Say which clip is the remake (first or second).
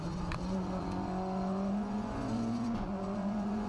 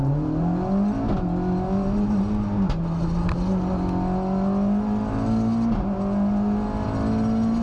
first